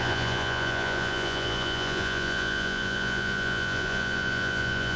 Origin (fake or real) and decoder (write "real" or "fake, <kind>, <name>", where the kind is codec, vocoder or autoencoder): fake, vocoder, Vocos